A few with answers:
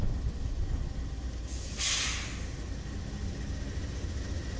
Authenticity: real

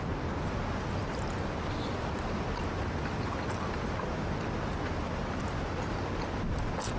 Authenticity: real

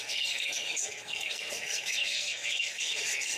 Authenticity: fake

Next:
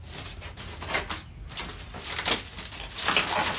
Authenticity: real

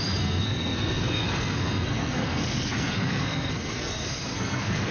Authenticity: fake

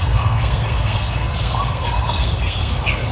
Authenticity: fake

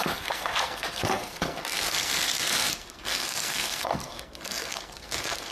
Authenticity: fake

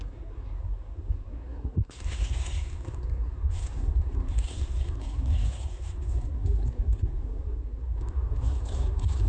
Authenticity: fake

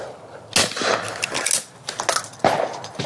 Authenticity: real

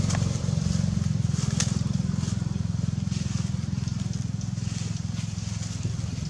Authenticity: real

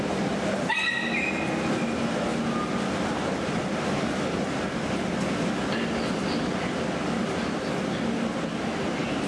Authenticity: real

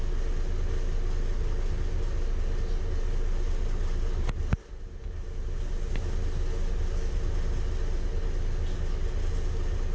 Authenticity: real